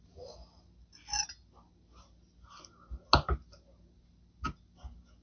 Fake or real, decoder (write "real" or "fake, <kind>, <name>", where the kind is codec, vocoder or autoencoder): real